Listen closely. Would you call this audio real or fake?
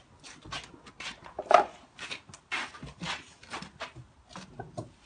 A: real